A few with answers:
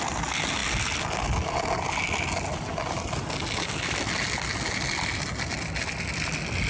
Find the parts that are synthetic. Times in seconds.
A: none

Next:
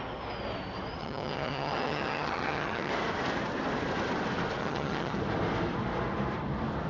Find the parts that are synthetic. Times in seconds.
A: 1.0-2.9 (vocoder, HiFi-GAN); 4.6-5.2

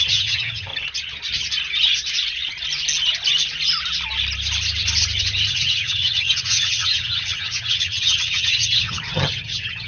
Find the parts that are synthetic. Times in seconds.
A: 0.0-0.7 (vocoder, HiFi-GAN); 5.5-9.9

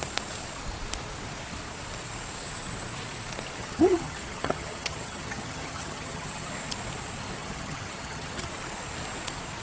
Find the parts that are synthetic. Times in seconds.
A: 3.6-6.5 (vocoder, HiFi-GAN); 7.4-8.5

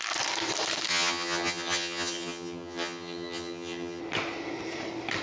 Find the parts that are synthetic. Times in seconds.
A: 0.9-4.0 (vocoder, HiFi-GAN)